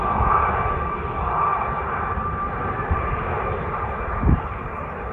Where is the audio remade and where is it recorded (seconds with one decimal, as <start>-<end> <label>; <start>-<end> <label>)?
0.0-1.5 recorded; 1.5-4.6 remade; 4.6-5.1 recorded